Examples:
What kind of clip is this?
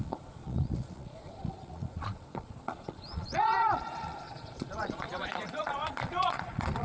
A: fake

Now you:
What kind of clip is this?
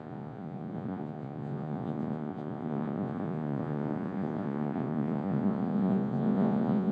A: fake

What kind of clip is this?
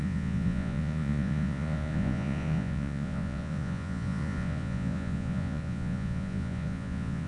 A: fake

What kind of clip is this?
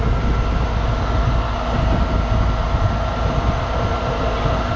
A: real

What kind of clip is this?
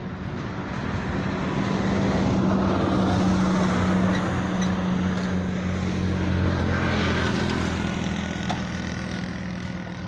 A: real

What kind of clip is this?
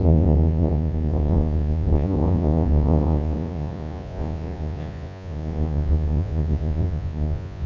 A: fake